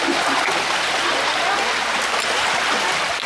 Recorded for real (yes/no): yes